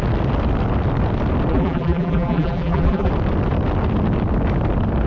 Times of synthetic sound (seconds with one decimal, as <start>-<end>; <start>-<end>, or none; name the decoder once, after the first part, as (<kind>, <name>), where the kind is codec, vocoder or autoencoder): 1.5-3.1 (vocoder, BigVGAN v2)